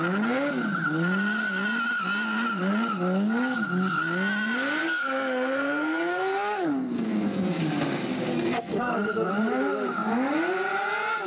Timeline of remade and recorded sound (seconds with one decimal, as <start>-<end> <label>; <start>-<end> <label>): 0.0-4.8 recorded; 4.8-7.6 remade; 7.6-8.3 recorded; 8.3-9.3 remade; 9.3-11.3 recorded